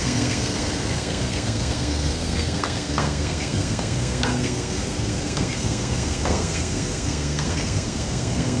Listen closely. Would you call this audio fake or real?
fake